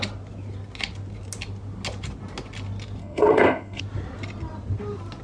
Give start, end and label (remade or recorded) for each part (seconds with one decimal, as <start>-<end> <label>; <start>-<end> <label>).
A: 0.0-3.0 recorded; 3.0-3.8 remade; 3.8-5.2 recorded